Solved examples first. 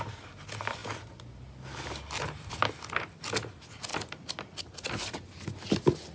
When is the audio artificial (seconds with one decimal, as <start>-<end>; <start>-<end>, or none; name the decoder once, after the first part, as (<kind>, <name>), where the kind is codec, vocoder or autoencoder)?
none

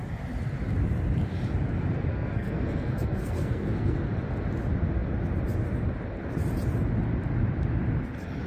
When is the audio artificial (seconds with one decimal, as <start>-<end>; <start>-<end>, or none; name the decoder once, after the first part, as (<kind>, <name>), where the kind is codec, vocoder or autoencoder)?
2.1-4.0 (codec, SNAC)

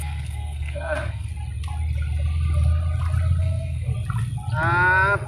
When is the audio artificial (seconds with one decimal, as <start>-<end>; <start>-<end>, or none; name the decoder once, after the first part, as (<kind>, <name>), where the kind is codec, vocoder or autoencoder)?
0.0-1.3 (codec, SNAC); 3.4-3.9